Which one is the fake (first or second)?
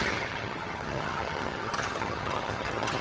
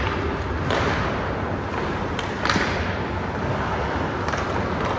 first